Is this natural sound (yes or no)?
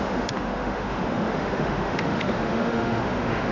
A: no